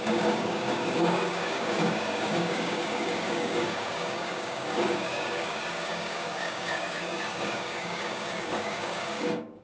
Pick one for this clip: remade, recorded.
remade